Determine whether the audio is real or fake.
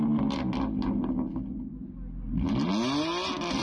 real